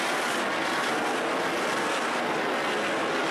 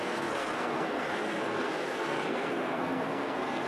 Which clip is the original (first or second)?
first